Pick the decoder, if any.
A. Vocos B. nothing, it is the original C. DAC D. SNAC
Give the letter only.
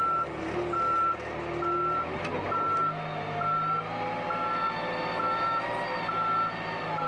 B